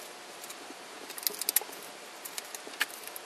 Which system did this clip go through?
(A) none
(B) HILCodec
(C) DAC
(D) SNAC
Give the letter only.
A